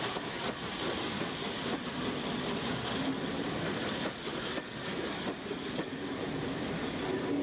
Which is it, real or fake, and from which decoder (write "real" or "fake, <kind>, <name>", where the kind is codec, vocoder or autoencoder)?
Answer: real